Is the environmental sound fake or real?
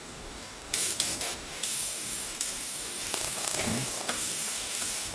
fake